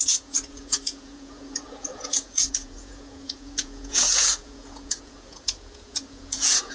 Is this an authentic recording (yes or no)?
no